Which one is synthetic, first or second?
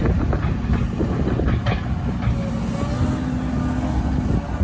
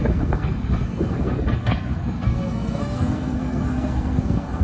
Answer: second